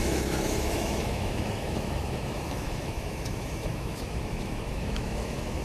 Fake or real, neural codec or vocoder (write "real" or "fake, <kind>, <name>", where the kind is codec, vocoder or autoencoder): fake, autoencoder, DAC-VAE